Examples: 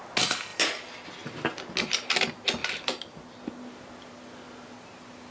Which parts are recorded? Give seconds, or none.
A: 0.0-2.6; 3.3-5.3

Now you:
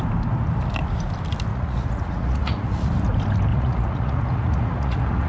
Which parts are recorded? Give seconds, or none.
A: 0.0-1.5; 2.9-3.5

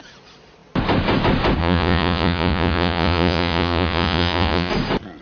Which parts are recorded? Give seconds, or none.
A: 0.0-1.6; 4.7-5.2

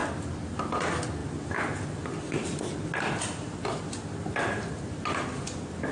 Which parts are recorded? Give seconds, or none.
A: 0.0-5.9

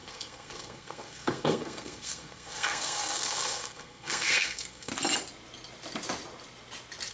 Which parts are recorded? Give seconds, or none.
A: 4.9-7.1

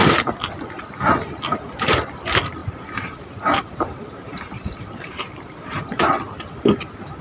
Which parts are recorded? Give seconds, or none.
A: 0.0-2.6

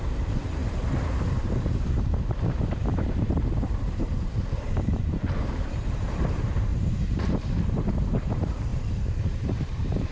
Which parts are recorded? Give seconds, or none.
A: 0.6-1.5